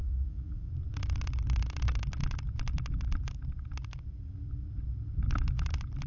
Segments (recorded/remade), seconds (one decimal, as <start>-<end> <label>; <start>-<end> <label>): 0.0-0.7 remade; 0.7-6.1 recorded